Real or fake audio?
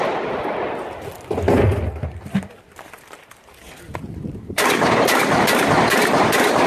fake